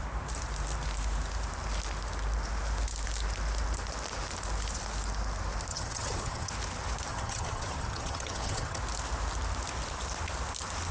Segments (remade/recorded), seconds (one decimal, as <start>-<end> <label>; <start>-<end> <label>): 0.0-5.7 recorded; 5.7-6.5 remade; 6.5-7.1 recorded; 7.1-8.8 remade; 8.8-10.9 recorded